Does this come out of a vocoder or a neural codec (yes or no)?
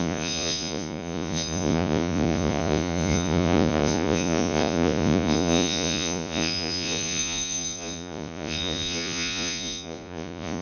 yes